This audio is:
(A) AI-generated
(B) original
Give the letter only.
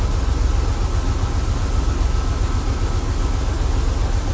B